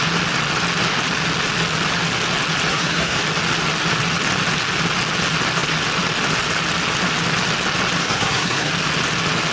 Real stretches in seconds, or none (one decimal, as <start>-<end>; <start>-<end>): 0.0-2.7; 3.2-8.0; 8.7-9.5